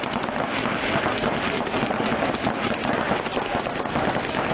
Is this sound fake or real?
fake